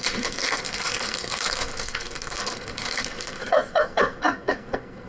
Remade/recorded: remade